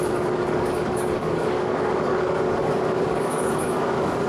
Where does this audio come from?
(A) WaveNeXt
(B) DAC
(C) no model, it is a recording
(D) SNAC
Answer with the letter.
B